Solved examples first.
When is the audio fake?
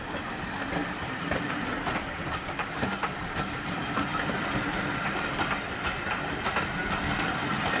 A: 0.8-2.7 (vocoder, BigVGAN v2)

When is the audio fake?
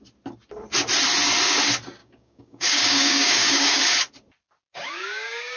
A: 2.0-3.8 (codec, DAC); 4.7-5.6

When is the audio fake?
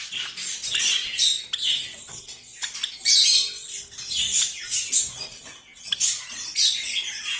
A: none